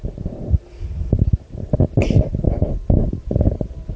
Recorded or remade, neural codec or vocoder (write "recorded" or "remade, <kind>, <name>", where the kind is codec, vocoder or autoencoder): recorded